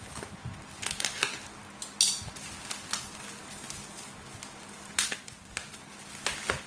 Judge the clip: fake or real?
real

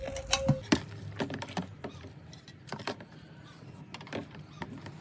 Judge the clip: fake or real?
real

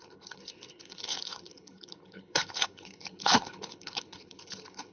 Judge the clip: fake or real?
fake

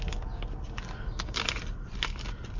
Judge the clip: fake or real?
real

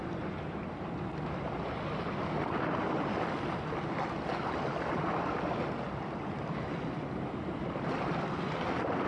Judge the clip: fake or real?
real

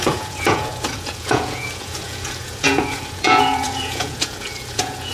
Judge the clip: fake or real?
fake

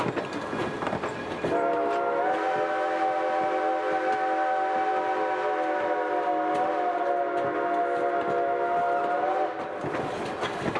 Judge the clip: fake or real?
real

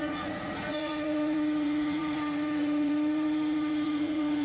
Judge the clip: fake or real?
fake